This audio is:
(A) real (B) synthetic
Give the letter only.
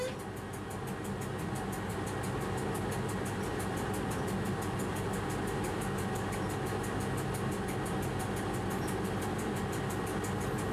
A